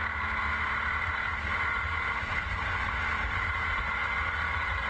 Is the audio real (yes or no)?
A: yes